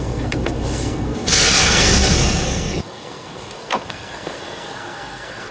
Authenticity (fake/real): fake